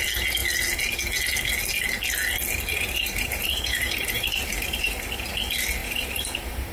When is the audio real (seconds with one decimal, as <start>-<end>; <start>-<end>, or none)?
0.0-2.7; 5.1-5.8